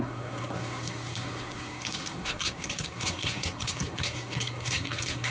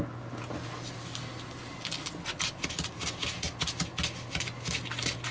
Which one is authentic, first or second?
second